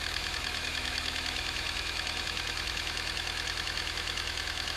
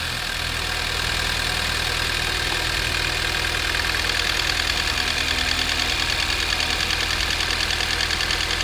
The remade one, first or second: first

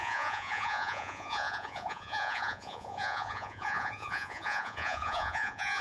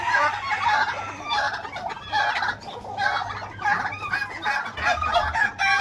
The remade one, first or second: first